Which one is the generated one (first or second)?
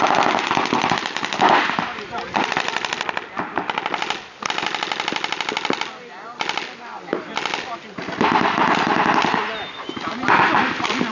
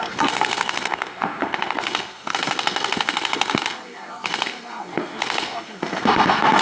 second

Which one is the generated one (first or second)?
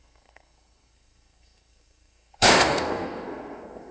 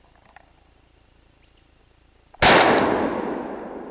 first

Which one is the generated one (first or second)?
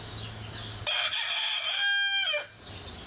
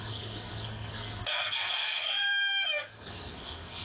second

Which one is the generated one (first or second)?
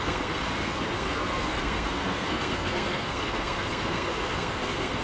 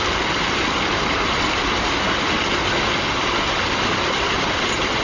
first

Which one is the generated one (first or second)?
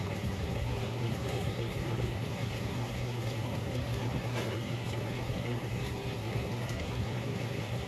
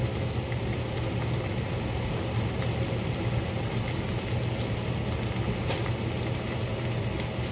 first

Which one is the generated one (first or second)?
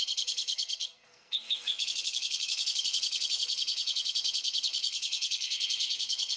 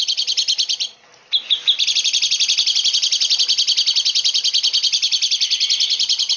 first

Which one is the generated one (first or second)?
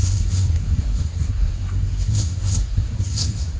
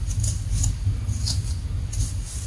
first